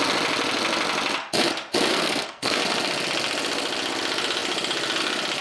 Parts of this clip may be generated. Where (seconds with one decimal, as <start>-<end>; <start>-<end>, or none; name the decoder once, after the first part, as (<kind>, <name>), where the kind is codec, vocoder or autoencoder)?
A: 1.9-2.6 (codec, SNAC)